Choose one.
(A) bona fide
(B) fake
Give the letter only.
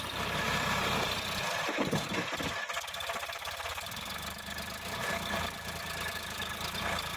B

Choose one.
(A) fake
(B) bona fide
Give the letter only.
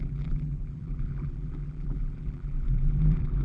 A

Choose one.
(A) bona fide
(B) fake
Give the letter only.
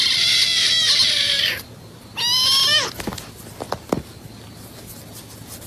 A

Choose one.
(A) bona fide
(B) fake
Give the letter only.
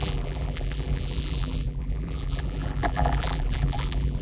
B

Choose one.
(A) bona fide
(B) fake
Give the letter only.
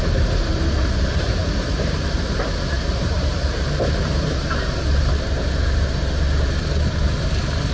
B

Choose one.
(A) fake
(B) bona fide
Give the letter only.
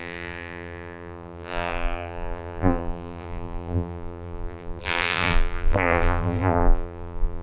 A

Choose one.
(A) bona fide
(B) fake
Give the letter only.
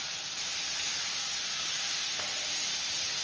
A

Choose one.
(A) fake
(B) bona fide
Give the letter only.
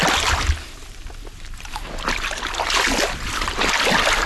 B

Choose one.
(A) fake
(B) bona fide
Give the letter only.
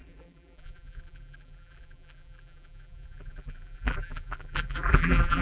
A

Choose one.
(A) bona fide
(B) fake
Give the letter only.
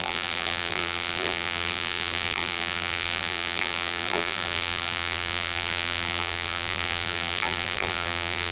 B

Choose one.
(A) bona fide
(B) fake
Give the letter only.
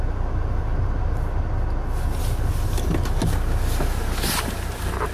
A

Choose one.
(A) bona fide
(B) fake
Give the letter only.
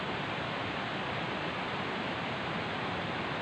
A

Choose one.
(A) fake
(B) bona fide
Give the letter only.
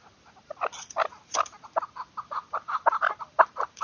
A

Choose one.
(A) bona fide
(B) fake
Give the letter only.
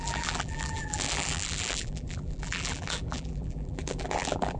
B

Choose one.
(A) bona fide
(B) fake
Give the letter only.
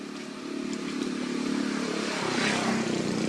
A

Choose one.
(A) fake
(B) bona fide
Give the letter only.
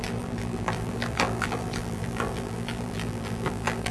A